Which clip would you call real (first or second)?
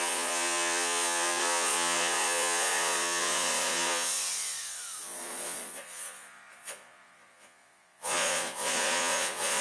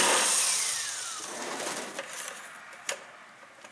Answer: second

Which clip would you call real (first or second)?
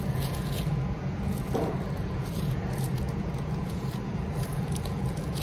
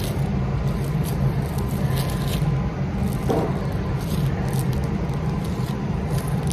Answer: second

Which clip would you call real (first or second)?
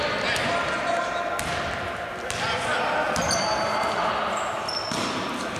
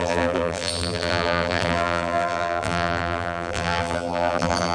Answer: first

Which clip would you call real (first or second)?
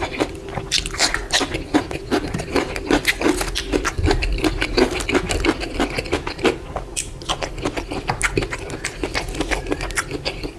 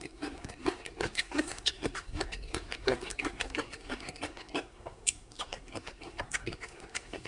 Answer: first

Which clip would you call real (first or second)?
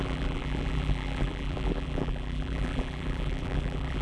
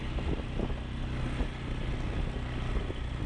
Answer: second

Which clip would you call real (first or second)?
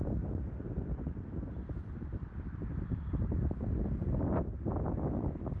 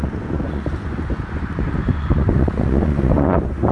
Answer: first